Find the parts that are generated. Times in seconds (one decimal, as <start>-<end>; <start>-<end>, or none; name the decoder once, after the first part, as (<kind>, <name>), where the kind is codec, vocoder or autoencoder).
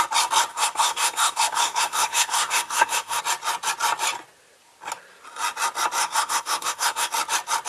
0.5-3.2 (codec, SNAC); 6.0-7.1